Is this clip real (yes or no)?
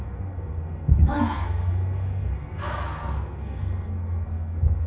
no